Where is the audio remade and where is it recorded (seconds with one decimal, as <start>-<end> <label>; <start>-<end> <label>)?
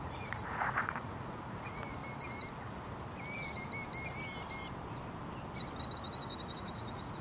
0.0-2.0 remade; 2.0-6.3 recorded; 6.3-7.2 remade